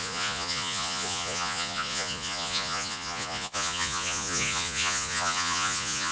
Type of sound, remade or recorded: remade